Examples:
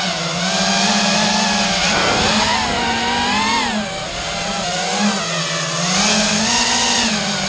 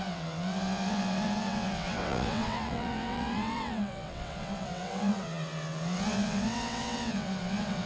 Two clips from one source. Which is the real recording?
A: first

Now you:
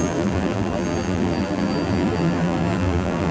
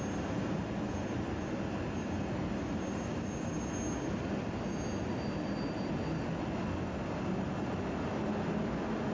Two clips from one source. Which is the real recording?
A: second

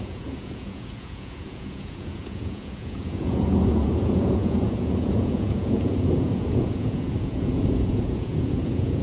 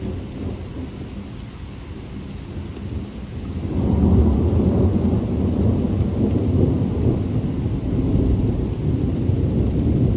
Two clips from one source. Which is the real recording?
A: second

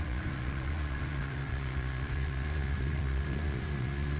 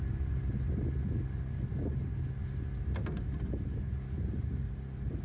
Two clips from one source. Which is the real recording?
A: second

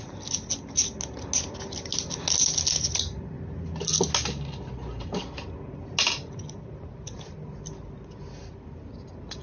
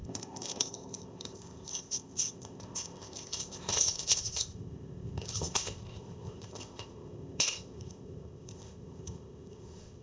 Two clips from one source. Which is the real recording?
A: first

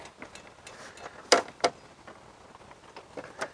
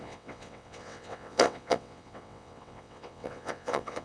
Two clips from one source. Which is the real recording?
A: first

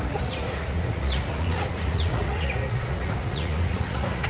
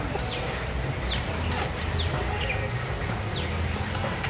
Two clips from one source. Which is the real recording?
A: second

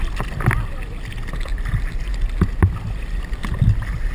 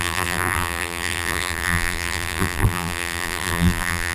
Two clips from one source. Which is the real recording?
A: first